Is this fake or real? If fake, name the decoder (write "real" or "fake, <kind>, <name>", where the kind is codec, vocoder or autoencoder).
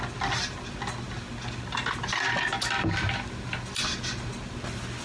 real